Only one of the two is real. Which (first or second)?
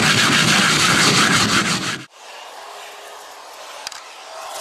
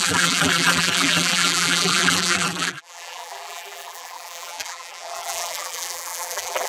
first